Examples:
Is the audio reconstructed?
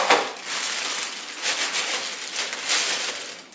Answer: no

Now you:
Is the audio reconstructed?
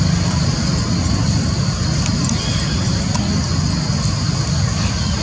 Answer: no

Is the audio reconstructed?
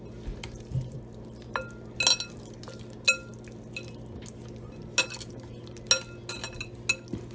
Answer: no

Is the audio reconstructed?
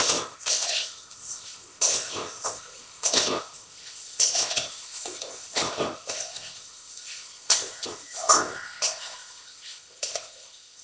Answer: yes